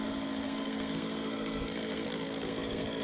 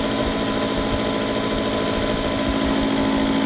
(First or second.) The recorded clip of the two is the second